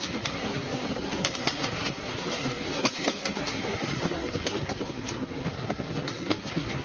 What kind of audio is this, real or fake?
fake